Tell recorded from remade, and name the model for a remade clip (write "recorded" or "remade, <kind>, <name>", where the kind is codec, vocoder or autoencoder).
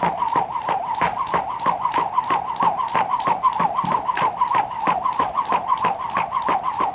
recorded